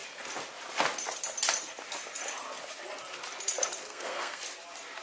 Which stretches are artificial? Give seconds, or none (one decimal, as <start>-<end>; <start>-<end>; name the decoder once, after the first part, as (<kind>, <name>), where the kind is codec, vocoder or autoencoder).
3.8-4.4 (codec, SNAC)